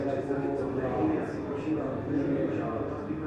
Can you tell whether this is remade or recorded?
recorded